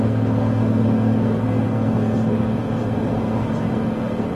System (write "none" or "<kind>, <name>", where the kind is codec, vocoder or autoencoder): codec, SNAC